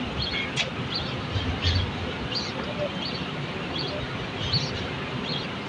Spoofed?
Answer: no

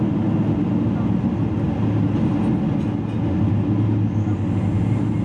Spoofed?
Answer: no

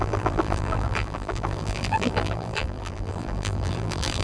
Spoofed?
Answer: yes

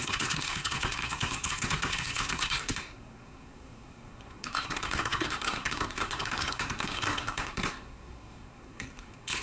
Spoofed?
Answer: yes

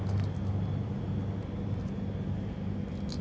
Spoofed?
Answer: no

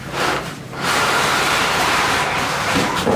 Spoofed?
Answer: yes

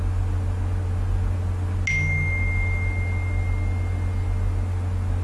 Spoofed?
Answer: no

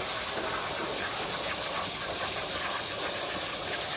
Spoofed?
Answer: no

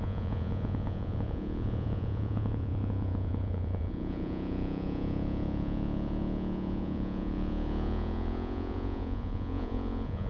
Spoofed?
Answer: yes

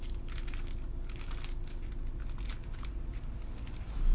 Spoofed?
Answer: no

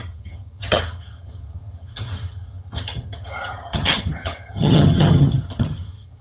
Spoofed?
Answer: yes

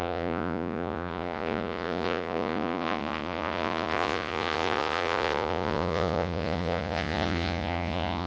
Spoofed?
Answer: yes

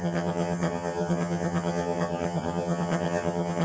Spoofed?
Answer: yes